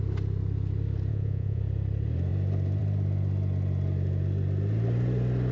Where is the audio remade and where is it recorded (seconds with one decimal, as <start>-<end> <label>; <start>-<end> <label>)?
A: 0.0-1.1 recorded; 1.1-1.6 remade; 1.6-5.5 recorded